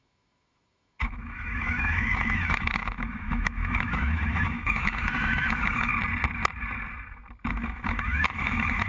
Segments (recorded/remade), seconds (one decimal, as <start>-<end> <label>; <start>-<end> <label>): 0.0-5.9 remade; 5.9-7.5 recorded; 7.5-8.9 remade